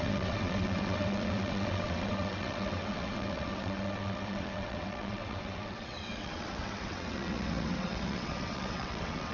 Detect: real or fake fake